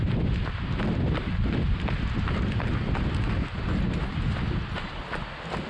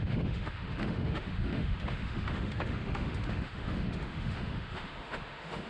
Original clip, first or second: first